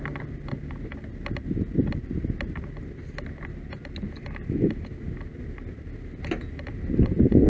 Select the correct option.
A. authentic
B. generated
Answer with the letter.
A